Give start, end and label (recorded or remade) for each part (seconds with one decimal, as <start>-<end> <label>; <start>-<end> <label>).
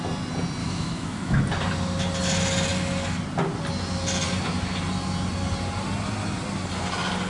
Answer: 0.0-0.6 recorded; 0.6-1.4 remade; 1.4-7.3 recorded